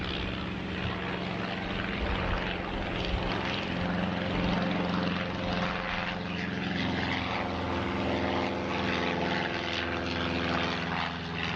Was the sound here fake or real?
real